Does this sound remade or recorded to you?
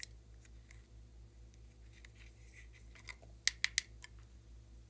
recorded